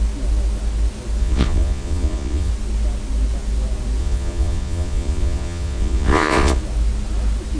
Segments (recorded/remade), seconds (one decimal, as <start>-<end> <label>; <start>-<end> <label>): 0.0-1.2 recorded; 1.2-2.5 remade; 2.5-4.0 recorded; 4.0-6.6 remade; 6.6-7.6 recorded